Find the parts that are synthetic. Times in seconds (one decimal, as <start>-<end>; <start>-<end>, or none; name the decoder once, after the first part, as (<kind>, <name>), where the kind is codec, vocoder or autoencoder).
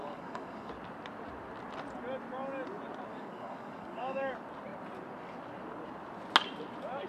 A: 0.0-0.7 (codec, DAC); 3.1-4.3